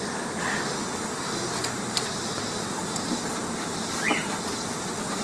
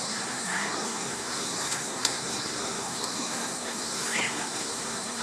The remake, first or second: second